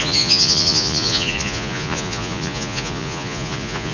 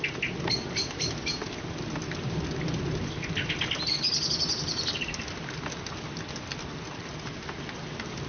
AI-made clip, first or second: first